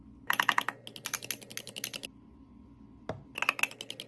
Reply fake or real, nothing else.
real